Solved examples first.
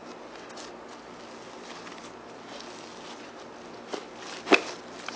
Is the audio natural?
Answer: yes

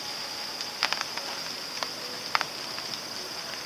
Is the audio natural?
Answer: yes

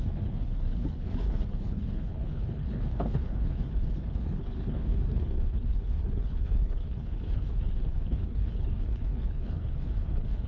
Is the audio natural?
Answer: no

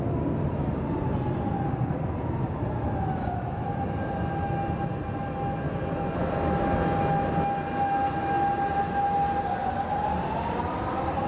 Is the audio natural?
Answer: yes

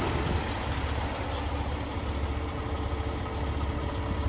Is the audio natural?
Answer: yes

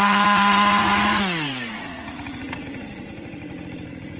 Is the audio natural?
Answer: no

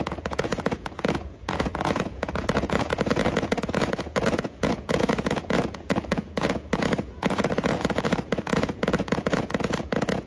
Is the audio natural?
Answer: no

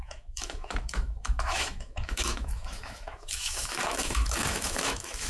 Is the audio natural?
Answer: no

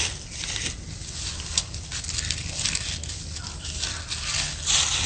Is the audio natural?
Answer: yes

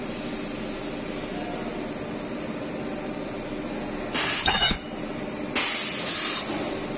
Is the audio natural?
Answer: yes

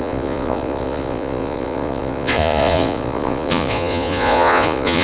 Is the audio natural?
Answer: no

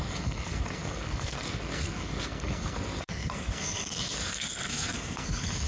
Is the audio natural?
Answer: no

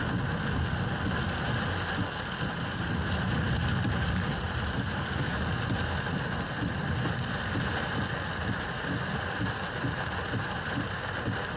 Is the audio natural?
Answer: yes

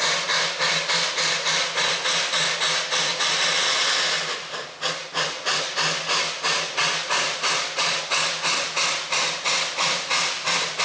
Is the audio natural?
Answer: yes